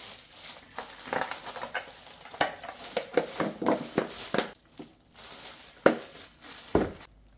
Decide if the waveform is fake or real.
real